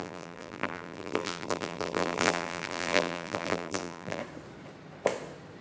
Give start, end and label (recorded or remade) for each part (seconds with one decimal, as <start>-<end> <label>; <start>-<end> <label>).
0.0-4.2 remade; 4.2-5.6 recorded